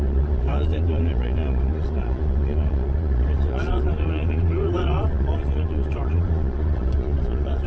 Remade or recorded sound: remade